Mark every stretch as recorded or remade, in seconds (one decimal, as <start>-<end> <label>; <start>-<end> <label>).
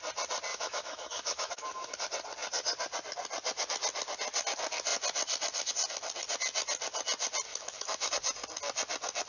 0.0-0.5 recorded; 0.5-1.9 remade; 1.9-7.5 recorded; 7.5-8.1 remade; 8.1-9.3 recorded